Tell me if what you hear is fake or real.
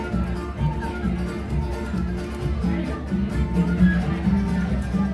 real